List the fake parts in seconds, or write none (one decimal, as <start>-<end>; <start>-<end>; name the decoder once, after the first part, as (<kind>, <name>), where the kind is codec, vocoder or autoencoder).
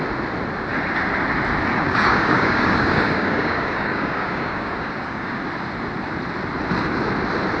1.7-5.4 (codec, DAC)